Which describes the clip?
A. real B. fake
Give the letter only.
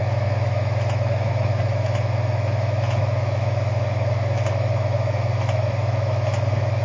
B